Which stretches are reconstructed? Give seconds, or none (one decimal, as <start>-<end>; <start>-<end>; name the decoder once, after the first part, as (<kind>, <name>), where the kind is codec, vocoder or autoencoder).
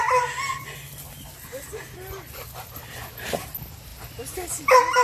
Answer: none